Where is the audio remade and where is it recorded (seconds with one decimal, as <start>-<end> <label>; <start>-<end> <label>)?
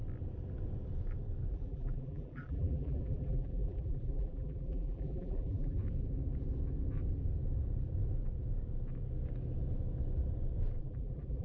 0.0-1.5 recorded; 1.5-5.8 remade; 5.8-10.8 recorded; 10.8-11.4 remade